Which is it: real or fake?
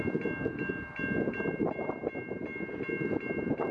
real